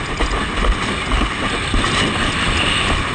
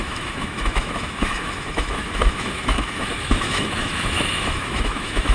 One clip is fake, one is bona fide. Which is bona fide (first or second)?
first